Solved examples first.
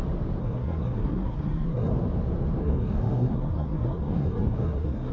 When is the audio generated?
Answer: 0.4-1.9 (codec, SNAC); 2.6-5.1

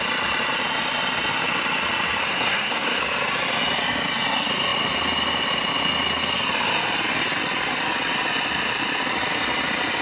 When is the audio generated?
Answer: 2.2-3.0 (codec, SNAC)

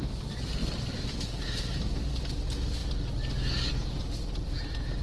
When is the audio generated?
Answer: none

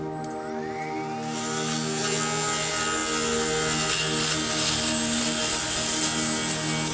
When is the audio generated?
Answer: none

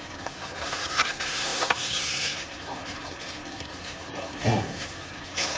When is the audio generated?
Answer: 0.0-5.6 (codec, SNAC)